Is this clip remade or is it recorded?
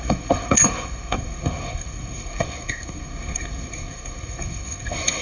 remade